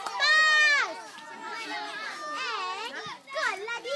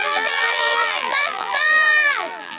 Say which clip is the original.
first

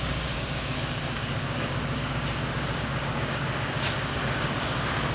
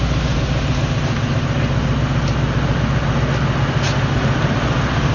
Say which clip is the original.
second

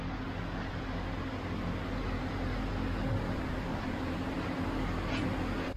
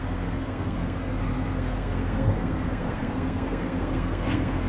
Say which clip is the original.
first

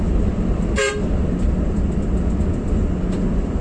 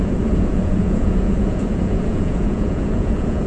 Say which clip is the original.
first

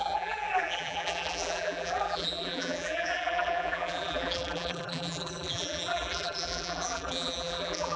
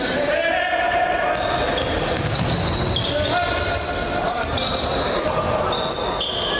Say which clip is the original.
second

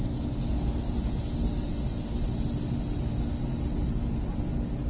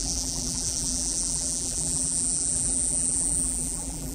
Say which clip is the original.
first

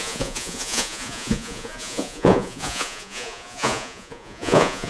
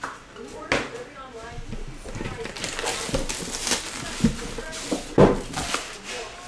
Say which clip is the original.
second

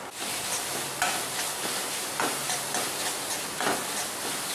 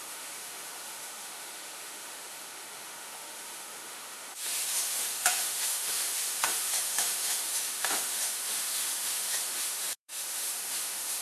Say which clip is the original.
first